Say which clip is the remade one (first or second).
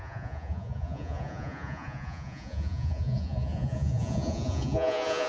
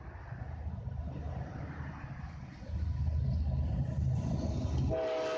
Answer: first